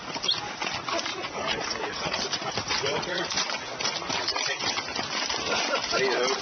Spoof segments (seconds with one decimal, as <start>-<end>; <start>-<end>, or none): 1.1-3.5